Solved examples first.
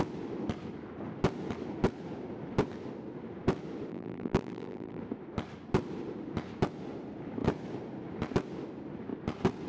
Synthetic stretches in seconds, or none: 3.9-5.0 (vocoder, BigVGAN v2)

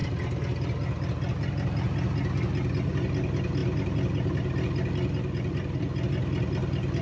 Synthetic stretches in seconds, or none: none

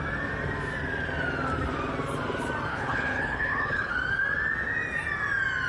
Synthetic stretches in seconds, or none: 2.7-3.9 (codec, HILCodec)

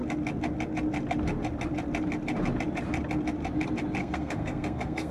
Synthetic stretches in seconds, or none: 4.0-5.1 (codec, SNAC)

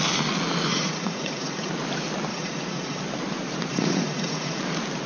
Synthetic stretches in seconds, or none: 0.7-1.7 (vocoder, Vocos); 2.3-3.0; 3.7-4.6